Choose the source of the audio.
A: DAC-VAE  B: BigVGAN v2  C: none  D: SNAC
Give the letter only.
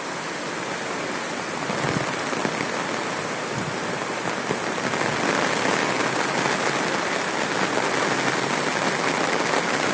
C